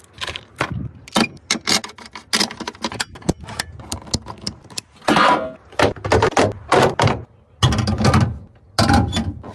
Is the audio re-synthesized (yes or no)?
no